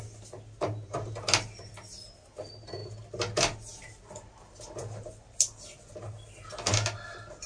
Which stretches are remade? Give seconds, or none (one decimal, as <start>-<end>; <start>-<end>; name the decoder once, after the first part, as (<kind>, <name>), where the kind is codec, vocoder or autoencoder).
none